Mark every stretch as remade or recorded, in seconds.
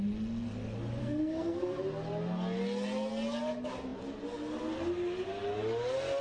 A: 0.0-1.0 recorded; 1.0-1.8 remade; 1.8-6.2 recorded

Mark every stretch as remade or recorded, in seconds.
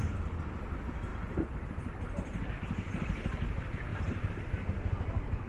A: 0.0-1.1 recorded; 1.1-2.5 remade; 2.5-3.9 recorded; 3.9-4.4 remade; 4.4-5.5 recorded